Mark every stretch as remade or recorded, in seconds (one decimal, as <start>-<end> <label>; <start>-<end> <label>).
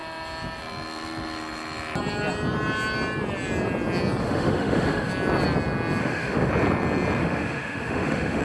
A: 0.0-4.2 recorded; 4.2-5.1 remade; 5.1-6.0 recorded; 6.0-6.5 remade; 6.5-7.2 recorded; 7.2-8.4 remade